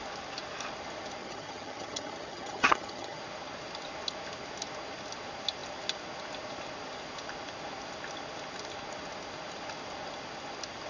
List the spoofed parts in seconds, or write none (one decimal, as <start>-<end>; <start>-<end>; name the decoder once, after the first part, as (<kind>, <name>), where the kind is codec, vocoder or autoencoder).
1.2-3.2 (vocoder, HiFi-GAN)